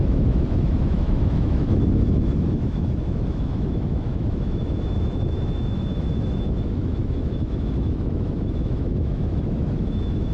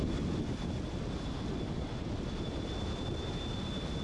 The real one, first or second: second